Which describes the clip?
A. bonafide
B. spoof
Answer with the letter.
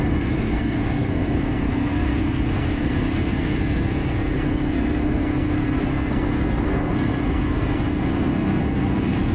B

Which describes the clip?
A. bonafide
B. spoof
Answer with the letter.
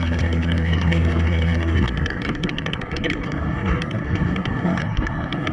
B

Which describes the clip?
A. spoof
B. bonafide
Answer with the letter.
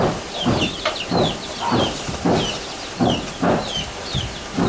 B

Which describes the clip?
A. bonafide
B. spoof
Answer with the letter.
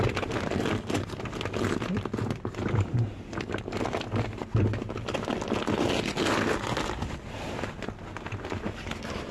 A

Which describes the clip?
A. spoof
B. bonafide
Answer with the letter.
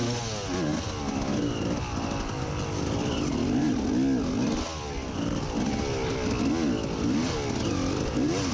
B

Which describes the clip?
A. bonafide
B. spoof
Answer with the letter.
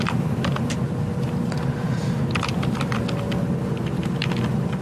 A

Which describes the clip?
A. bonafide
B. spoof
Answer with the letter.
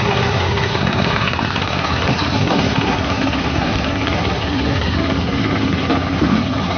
B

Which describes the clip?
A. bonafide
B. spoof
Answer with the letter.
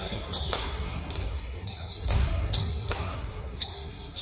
B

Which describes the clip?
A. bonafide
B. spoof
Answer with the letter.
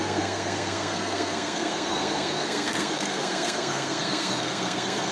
B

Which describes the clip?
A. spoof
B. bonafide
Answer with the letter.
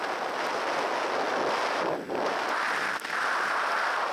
B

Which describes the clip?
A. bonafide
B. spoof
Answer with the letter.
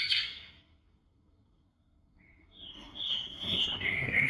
B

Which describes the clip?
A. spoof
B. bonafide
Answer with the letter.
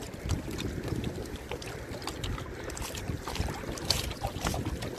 B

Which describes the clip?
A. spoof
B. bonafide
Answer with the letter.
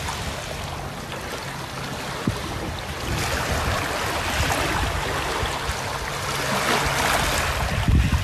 B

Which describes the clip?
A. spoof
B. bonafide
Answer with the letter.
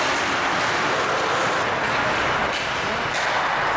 B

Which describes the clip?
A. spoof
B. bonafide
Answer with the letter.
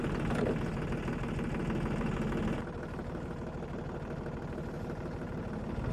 B